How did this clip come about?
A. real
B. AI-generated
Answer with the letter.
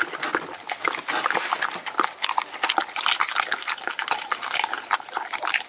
A